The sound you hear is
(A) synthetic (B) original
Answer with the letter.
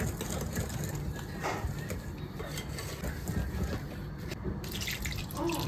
B